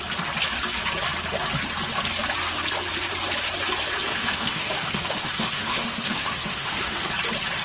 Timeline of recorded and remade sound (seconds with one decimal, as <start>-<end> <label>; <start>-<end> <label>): 0.0-4.1 recorded; 4.1-7.1 remade; 7.1-7.6 recorded